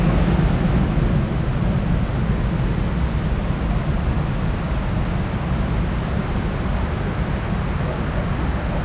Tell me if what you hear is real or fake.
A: real